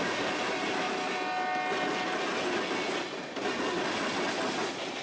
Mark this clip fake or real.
real